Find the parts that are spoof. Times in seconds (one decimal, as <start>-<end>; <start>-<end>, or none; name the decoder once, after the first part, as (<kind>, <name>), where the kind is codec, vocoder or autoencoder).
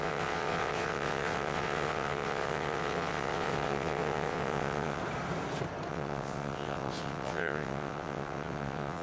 0.0-5.0 (vocoder, WaveNeXt); 5.9-9.0